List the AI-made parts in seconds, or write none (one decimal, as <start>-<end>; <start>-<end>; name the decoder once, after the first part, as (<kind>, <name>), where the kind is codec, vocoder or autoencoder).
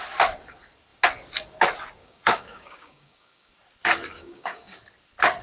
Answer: 2.0-3.5 (codec, DAC); 4.1-4.6